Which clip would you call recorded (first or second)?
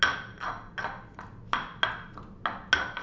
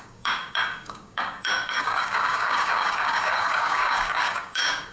first